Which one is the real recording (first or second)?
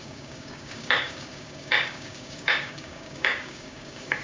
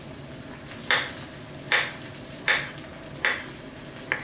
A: second